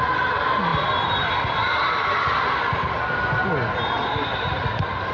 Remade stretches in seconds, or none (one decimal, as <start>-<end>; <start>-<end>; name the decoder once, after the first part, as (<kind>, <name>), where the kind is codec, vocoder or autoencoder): none